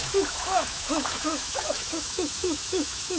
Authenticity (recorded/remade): remade